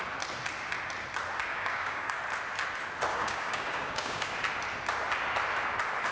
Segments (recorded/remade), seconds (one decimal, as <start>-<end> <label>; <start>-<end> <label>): 0.0-1.5 recorded; 1.5-2.2 remade; 2.2-3.1 recorded; 3.1-4.3 remade; 4.3-6.1 recorded